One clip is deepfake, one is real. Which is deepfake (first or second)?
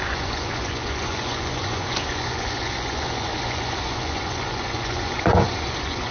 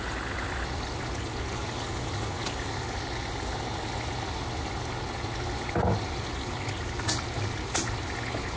first